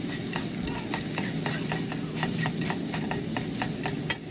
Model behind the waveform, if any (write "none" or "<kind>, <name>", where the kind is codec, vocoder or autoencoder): none